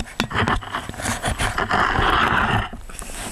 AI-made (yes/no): no